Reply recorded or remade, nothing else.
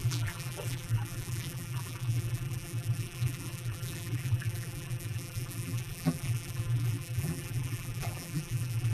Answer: remade